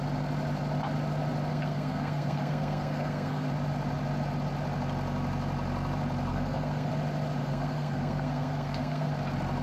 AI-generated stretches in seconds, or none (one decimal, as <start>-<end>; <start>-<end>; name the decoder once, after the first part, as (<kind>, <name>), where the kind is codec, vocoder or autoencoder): 1.5-3.5 (codec, SNAC); 6.3-6.9; 7.4-9.1